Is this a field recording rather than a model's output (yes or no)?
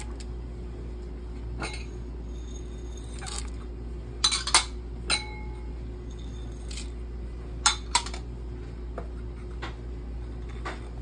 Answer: yes